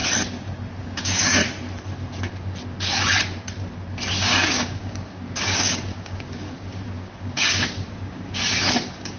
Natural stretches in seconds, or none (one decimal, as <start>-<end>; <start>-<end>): 0.0-0.8; 1.4-4.2